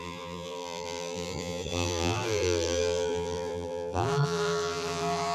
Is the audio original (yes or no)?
no